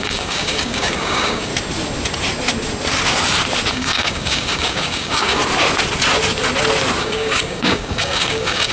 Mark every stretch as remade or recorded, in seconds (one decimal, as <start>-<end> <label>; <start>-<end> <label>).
0.0-1.5 remade; 1.5-3.7 recorded; 3.7-5.4 remade; 5.4-7.0 recorded; 7.0-8.7 remade